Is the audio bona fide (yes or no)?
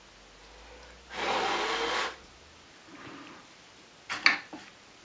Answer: yes